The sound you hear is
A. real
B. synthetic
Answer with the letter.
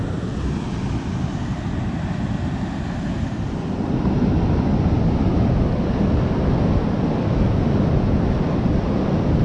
A